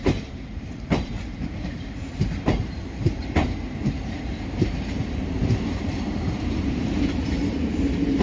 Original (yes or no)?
no